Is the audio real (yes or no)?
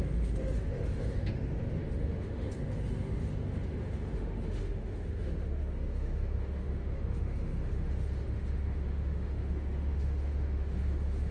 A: no